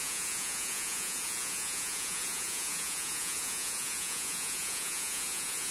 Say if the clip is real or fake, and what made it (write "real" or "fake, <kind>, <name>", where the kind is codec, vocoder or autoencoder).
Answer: fake, vocoder, Vocos